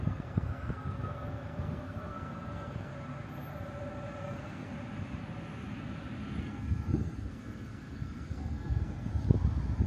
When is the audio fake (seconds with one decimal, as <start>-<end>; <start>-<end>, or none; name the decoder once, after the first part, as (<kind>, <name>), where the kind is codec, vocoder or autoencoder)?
0.0-2.9 (codec, SNAC); 4.2-4.7; 6.4-9.1